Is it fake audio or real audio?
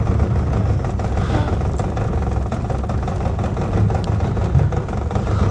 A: real